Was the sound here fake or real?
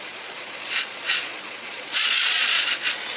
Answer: fake